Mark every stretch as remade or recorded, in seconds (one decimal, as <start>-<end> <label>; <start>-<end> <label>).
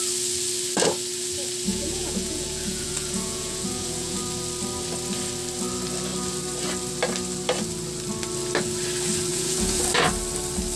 0.0-1.7 recorded; 1.7-4.2 remade; 4.2-9.3 recorded; 9.3-9.8 remade; 9.8-10.8 recorded